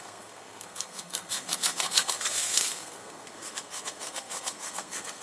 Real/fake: fake